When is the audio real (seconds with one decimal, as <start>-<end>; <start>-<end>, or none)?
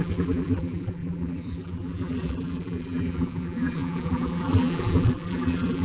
none